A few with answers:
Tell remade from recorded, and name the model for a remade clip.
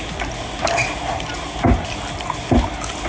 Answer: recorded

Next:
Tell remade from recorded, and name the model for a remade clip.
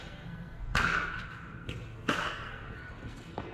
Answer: remade, codec, SNAC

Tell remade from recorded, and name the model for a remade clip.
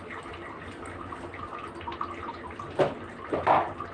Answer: recorded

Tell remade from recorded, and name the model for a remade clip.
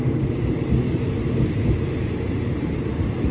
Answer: recorded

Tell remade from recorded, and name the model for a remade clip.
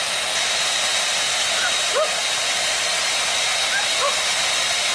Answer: recorded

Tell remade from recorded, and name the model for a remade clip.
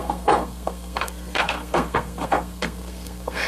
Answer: remade, codec, SNAC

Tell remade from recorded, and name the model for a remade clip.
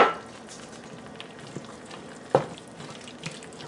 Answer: recorded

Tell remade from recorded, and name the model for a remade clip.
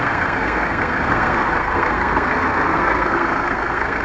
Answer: remade, codec, SNAC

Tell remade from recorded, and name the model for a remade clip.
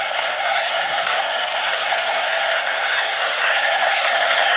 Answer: remade, codec, SNAC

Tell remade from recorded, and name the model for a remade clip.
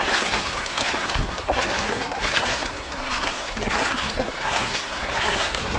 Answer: remade, codec, SNAC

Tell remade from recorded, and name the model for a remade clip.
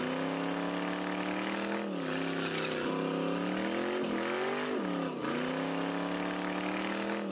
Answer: recorded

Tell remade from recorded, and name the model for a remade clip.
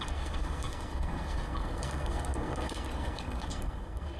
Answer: remade, codec, SNAC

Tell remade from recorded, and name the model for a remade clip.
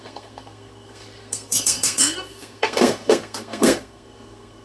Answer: remade, codec, SNAC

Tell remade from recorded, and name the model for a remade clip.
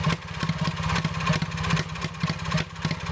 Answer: recorded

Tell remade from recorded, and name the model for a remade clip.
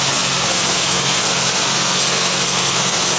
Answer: remade, codec, SNAC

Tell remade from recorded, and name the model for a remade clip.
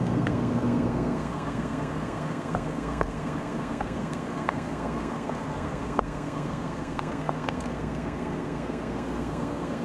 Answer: remade, codec, SNAC